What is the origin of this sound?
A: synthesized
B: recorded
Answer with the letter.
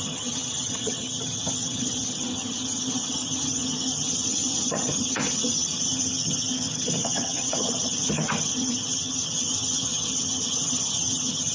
A